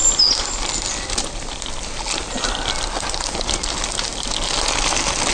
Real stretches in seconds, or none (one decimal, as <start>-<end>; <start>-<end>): 0.0-5.3